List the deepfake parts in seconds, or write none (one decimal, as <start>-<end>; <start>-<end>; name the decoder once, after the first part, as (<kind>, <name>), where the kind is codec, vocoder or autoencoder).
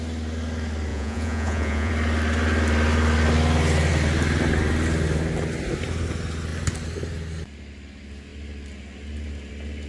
0.9-1.9 (vocoder, Vocos)